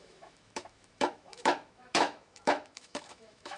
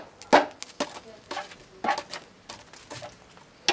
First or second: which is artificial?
first